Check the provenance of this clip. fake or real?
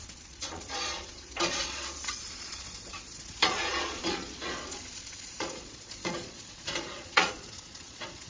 fake